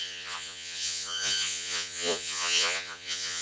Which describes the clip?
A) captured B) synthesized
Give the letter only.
B